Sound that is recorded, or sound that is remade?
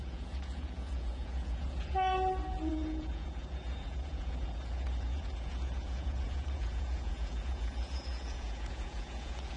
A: remade